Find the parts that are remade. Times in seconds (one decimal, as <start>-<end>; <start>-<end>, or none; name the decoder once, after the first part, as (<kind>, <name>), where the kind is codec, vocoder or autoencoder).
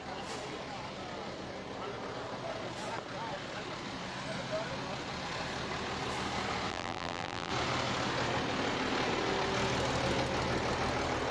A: 6.7-7.5 (vocoder, BigVGAN v2)